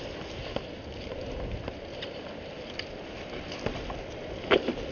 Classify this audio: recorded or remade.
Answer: recorded